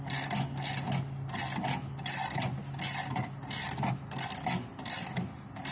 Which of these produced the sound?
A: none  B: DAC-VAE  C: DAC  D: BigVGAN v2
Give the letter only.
A